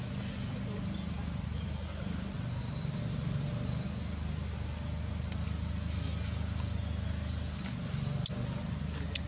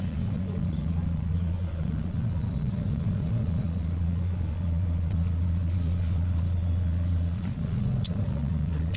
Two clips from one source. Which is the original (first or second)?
first